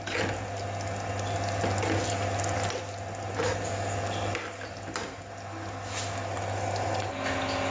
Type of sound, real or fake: real